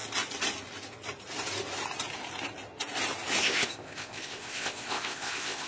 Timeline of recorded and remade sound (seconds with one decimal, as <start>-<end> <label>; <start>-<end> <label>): 0.0-3.4 recorded; 3.4-5.7 remade